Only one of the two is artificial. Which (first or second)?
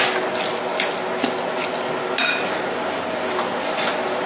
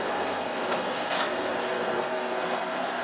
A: second